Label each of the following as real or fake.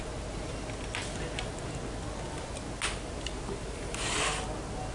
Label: real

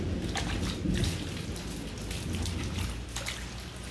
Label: real